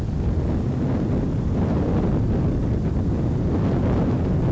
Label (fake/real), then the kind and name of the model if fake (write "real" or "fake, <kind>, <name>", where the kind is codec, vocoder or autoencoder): real